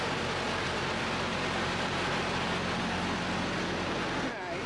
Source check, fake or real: real